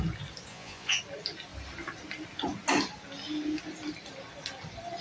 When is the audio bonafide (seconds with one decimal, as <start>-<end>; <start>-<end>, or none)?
0.0-0.5; 1.0-5.0